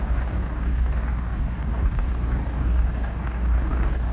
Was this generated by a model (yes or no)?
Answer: yes